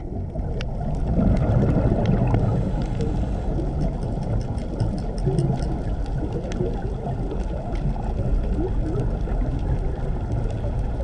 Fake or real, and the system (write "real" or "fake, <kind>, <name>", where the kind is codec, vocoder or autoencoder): real